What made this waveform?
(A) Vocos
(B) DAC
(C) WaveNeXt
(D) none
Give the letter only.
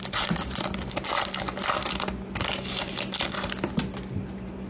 D